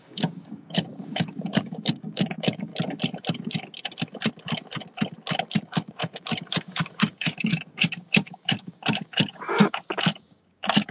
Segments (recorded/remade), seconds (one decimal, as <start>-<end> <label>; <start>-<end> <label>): 0.0-2.7 remade; 2.7-5.6 recorded; 5.6-10.9 remade